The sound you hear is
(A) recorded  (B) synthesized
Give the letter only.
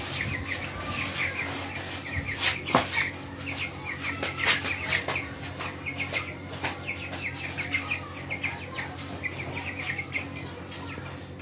A